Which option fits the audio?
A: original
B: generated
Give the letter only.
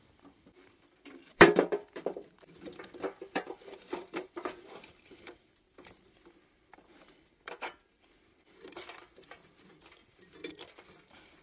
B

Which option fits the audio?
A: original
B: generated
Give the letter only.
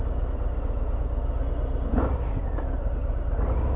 A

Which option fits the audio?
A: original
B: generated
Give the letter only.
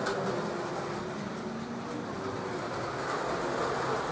A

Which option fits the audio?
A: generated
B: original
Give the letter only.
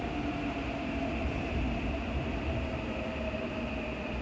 A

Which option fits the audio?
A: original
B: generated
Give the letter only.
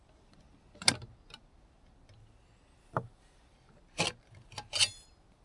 A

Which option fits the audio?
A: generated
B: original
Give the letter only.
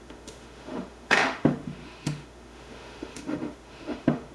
A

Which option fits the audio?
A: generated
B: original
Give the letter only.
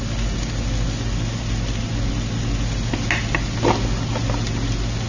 B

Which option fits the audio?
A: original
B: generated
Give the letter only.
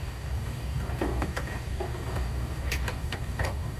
B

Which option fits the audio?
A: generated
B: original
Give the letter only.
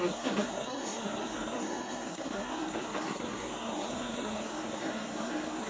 A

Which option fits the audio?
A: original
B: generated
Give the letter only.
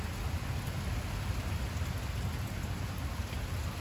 A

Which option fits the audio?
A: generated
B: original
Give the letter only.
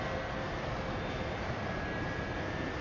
B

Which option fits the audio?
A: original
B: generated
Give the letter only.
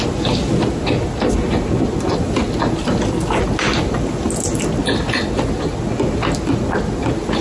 A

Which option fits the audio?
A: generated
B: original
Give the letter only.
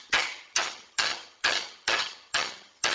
A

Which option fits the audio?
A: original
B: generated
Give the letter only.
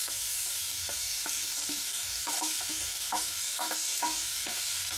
B